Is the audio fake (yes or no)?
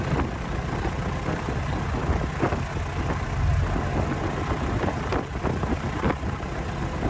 no